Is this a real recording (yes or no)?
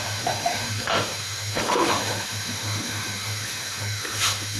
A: no